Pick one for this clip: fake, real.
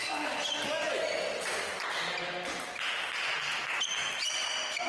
real